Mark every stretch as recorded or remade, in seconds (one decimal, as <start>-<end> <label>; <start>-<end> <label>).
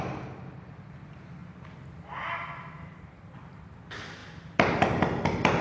0.0-5.6 recorded